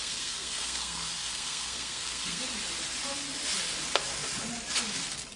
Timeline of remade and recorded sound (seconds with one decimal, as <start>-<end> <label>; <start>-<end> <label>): 0.0-2.4 remade; 2.4-5.4 recorded